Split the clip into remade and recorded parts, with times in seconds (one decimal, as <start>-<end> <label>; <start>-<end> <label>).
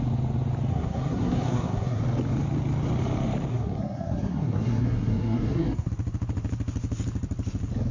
0.0-0.7 recorded; 0.7-2.0 remade; 2.0-3.5 recorded; 3.5-5.9 remade; 5.9-7.9 recorded